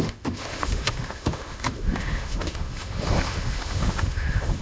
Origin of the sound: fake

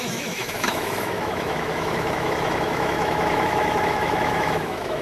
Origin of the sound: fake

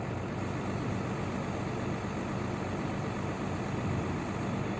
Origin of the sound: real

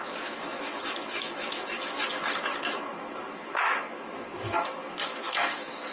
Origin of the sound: fake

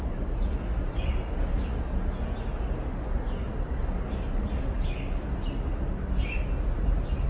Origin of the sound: real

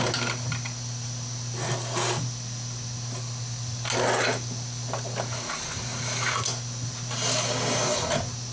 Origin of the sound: real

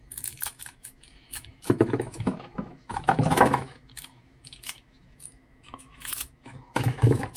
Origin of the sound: fake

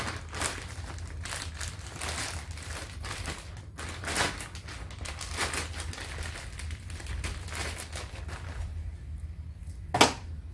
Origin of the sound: real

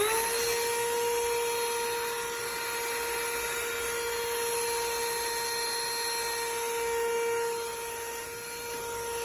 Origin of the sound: real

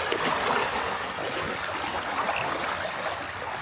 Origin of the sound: real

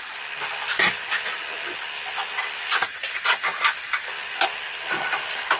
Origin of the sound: real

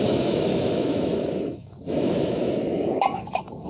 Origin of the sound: fake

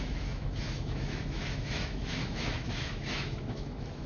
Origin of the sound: fake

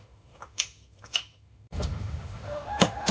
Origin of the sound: fake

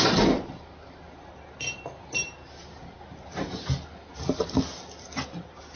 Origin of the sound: real